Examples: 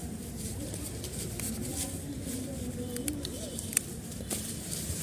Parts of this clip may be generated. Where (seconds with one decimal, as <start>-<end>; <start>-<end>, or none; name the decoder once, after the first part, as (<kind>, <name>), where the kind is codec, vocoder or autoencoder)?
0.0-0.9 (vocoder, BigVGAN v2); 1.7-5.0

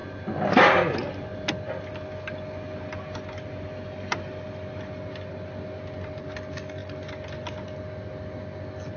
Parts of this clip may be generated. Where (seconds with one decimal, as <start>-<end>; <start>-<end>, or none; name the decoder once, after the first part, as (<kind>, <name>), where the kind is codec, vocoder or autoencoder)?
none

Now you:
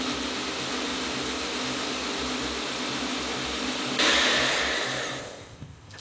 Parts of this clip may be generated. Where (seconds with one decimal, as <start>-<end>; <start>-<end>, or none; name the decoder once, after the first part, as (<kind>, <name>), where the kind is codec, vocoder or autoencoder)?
5.2-6.0 (codec, ZipCodec)